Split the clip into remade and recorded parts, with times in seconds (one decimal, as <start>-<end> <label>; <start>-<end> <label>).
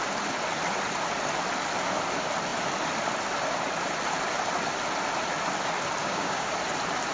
0.0-6.0 recorded; 6.0-6.5 remade; 6.5-7.1 recorded